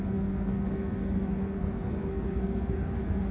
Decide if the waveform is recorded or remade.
remade